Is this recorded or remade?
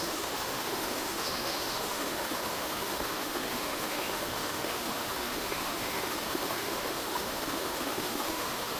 remade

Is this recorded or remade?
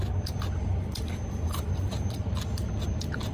remade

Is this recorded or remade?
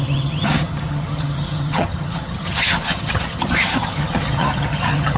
remade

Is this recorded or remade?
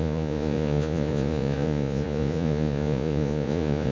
remade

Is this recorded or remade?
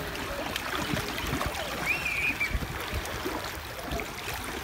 recorded